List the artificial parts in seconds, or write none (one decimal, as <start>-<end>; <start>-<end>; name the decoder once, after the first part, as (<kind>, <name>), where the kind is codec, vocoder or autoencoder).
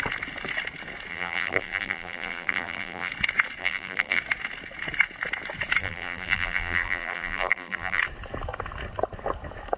1.1-3.1 (vocoder, BigVGAN v2); 3.6-4.2; 5.8-8.0